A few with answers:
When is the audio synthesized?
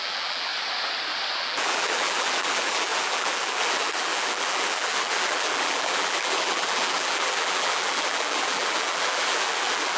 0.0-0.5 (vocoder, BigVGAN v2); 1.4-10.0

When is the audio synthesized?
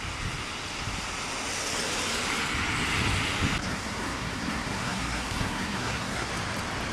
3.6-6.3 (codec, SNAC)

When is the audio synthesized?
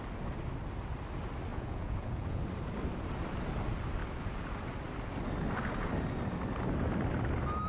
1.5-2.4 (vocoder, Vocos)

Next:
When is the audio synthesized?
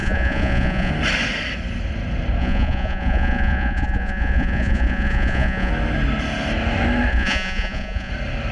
0.0-0.9 (vocoder, Vocos); 2.4-5.7; 7.1-8.1